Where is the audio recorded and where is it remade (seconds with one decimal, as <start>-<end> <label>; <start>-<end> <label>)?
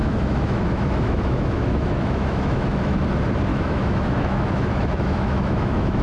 0.0-3.0 remade; 3.0-3.5 recorded; 3.5-6.0 remade